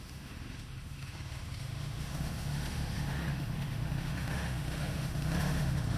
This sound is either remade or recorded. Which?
remade